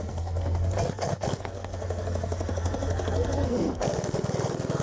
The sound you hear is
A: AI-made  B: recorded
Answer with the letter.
A